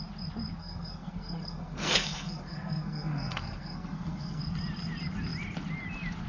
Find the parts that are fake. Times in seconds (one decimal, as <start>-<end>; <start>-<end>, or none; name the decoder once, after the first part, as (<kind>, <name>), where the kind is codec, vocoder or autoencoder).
0.6-4.4 (codec, SNAC)